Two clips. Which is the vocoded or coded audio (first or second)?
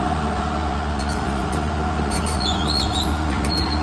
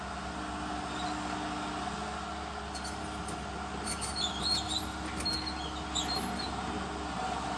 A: first